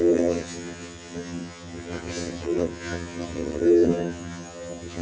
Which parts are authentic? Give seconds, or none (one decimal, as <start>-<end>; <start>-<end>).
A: none